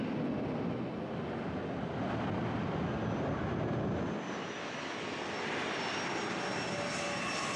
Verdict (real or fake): real